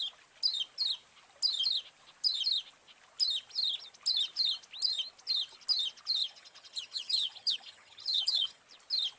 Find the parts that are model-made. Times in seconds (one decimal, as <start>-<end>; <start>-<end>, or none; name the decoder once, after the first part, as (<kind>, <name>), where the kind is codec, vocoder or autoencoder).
6.2-8.6 (vocoder, HiFi-GAN)